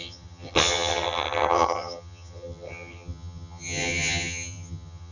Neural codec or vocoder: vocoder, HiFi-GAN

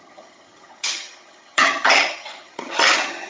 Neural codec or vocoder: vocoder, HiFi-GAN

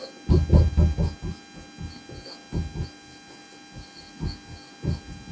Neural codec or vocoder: none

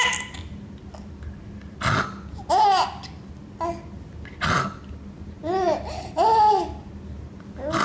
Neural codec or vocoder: none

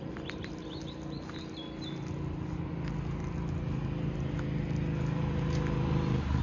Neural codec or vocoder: none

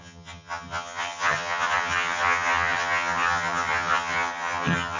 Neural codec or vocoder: vocoder, HiFi-GAN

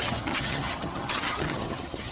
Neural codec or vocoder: vocoder, HiFi-GAN